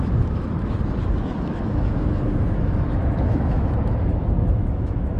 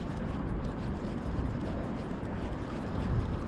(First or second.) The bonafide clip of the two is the second